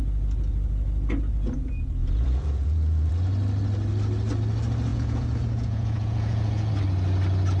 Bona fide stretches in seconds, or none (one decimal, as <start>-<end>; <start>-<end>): 0.0-2.0; 3.1-4.9; 6.7-7.6